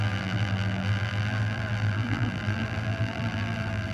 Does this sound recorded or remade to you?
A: remade